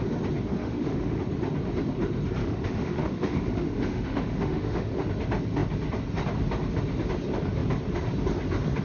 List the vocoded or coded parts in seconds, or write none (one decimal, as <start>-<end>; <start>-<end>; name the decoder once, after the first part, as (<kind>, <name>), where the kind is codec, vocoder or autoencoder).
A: 0.6-1.2 (autoencoder, DAC-VAE); 2.4-5.0